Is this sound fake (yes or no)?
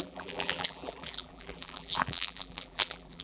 yes